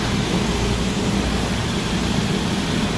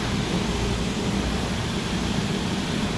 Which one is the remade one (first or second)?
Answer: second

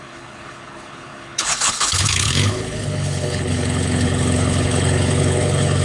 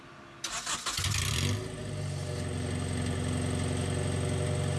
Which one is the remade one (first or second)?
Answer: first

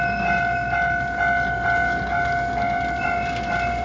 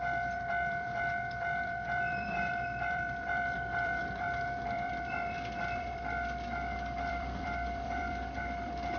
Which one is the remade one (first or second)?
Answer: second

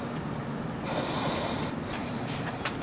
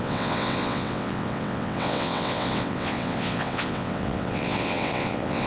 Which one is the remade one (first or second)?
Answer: second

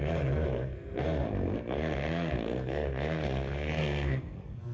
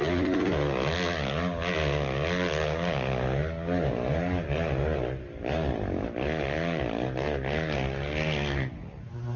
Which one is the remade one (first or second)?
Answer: first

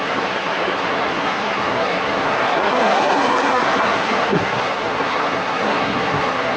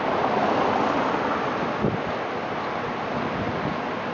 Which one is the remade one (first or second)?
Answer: first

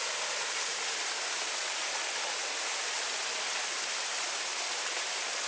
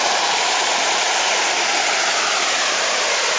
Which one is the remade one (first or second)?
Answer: second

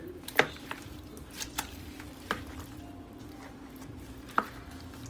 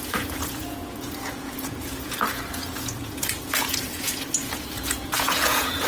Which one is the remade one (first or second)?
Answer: second